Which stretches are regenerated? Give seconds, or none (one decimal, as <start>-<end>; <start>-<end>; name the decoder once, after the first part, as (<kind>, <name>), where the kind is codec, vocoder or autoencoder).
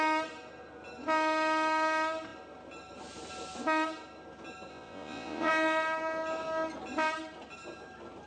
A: 4.7-5.5 (vocoder, Vocos)